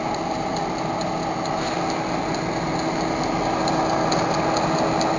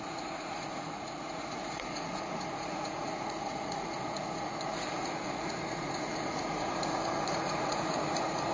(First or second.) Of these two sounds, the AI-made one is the second